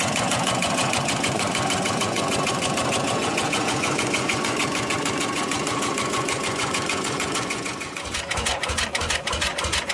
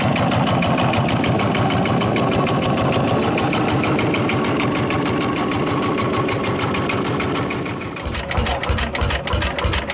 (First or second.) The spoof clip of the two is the first